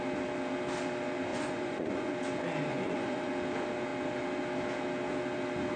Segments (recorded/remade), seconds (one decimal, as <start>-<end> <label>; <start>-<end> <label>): 0.0-1.3 recorded; 1.3-2.1 remade; 2.1-2.7 recorded; 2.7-3.3 remade; 3.3-5.8 recorded